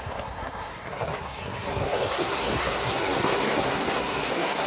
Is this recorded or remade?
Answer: remade